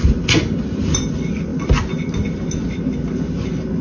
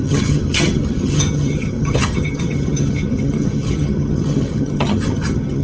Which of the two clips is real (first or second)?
first